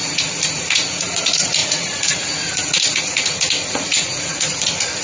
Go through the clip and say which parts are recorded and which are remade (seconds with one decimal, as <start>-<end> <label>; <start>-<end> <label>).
0.0-5.0 remade